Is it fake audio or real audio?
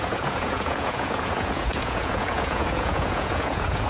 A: fake